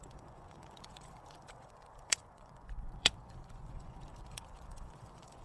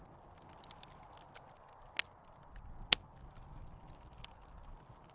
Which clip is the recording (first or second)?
second